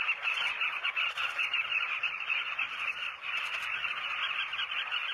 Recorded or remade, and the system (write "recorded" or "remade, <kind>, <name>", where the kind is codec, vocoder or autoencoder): remade, vocoder, BigVGAN v2